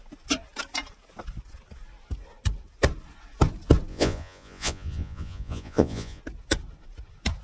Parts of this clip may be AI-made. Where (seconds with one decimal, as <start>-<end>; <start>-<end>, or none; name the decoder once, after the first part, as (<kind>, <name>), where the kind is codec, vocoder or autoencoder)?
3.9-6.2 (vocoder, Vocos)